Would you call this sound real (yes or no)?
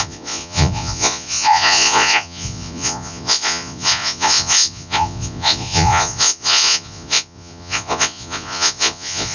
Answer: no